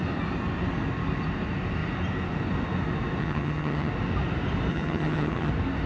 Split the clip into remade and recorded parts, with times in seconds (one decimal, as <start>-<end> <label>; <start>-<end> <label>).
0.0-3.2 recorded; 3.2-3.9 remade; 3.9-4.7 recorded; 4.7-5.5 remade; 5.5-5.9 recorded